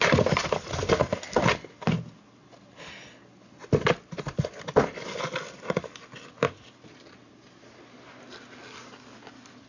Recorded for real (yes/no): yes